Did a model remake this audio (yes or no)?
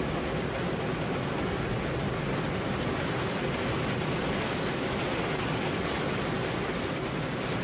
no